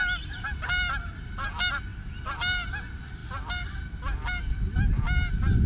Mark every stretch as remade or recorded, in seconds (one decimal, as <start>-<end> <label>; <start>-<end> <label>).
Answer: 0.0-5.7 recorded